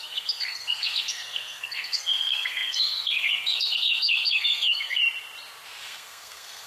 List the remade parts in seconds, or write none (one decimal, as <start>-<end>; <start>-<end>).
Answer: 0.0-5.0; 5.8-6.7